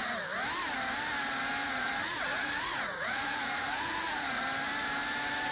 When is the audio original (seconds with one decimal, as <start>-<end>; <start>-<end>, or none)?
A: 0.0-1.6; 4.4-5.5